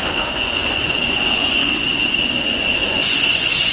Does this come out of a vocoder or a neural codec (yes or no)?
yes